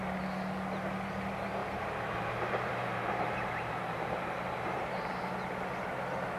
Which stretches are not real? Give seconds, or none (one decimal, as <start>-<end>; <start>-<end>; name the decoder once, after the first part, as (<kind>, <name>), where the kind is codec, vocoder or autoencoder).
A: 1.6-5.1 (vocoder, BigVGAN v2)